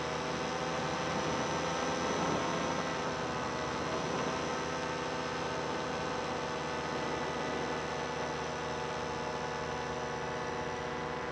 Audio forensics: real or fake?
real